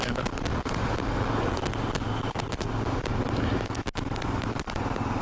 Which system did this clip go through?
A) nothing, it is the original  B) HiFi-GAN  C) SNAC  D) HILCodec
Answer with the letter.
A